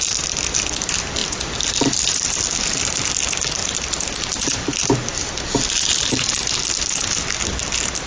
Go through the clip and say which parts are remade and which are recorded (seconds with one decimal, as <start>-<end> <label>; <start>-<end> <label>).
0.0-8.1 recorded